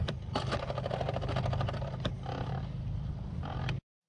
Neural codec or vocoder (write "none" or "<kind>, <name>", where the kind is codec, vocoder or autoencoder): vocoder, BigVGAN v2